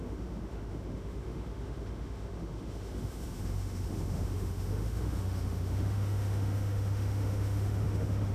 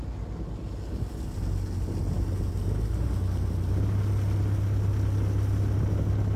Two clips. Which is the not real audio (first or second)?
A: first